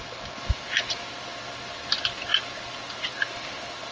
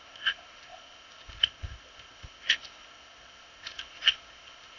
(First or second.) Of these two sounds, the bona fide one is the first